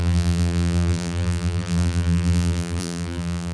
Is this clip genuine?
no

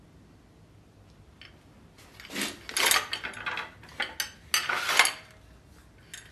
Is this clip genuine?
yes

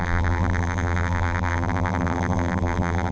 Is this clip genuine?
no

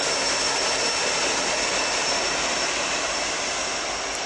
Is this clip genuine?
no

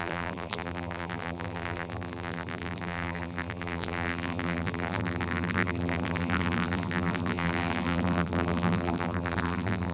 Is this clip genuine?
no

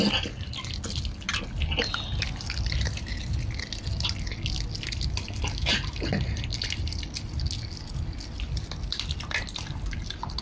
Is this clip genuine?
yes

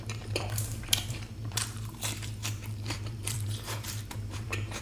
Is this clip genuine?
no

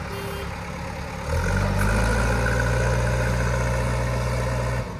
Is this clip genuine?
yes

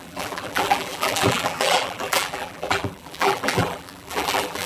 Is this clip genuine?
no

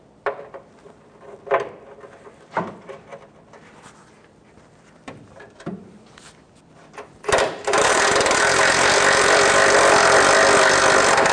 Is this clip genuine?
no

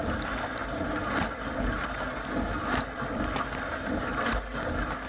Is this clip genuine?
yes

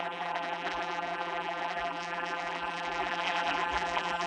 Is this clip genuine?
no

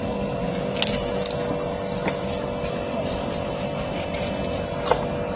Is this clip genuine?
yes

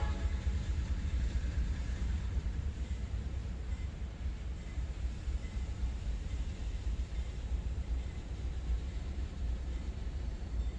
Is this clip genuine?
no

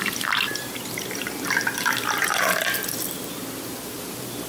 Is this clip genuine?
no